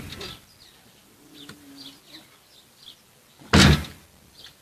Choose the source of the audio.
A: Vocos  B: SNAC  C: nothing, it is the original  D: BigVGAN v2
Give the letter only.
C